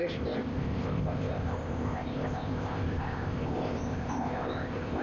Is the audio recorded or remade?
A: remade